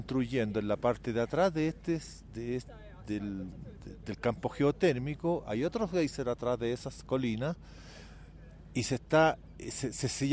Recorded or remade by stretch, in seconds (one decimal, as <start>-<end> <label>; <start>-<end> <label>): 0.0-2.8 recorded; 2.8-3.8 remade; 3.8-10.3 recorded